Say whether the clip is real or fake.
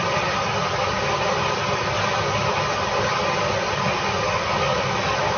real